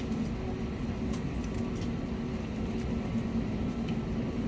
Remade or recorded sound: recorded